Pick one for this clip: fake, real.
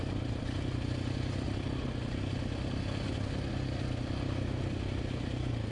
real